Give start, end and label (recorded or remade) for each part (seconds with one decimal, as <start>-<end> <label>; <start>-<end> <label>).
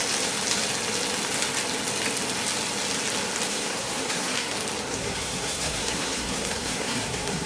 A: 0.0-3.5 recorded; 3.5-4.5 remade; 4.5-4.9 recorded; 4.9-7.5 remade